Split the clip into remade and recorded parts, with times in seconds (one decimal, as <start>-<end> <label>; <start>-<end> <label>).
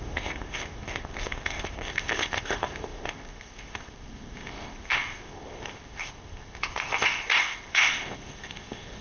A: 0.0-9.0 remade